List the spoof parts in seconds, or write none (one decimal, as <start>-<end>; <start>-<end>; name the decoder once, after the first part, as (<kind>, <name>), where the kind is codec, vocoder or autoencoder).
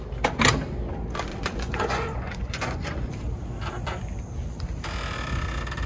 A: 1.3-3.1 (vocoder, Vocos)